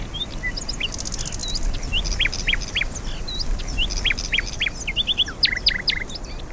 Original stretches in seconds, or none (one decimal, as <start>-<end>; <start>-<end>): 0.0-6.5